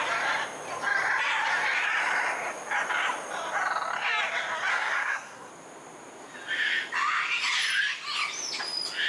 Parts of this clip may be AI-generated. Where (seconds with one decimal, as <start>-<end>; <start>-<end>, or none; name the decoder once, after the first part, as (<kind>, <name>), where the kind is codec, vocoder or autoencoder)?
4.7-5.5 (codec, SNAC)